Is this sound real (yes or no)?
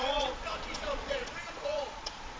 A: no